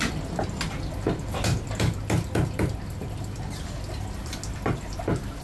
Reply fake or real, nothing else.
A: real